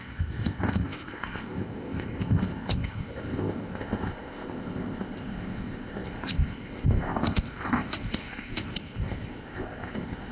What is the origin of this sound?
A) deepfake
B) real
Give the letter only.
A